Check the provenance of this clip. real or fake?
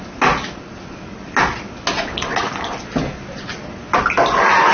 real